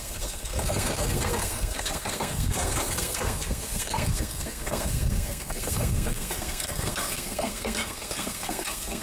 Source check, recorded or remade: remade